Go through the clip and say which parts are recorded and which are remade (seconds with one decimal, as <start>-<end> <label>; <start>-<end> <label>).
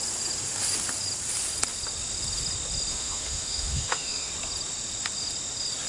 0.0-2.9 recorded; 2.9-4.3 remade; 4.3-5.9 recorded